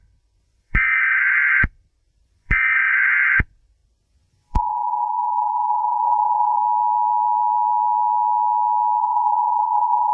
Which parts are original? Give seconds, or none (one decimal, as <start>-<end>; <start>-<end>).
6.6-9.0